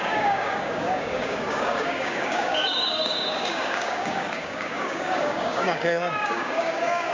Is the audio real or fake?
fake